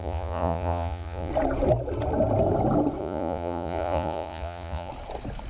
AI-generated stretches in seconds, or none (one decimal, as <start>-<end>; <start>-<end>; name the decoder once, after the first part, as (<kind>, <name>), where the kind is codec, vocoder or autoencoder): 0.0-1.3 (vocoder, Vocos); 3.0-4.9